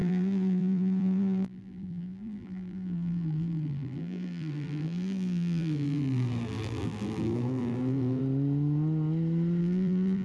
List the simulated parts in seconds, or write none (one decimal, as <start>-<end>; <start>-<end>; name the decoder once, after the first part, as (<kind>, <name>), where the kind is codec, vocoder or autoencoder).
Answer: 0.0-8.2 (vocoder, BigVGAN v2); 9.6-10.2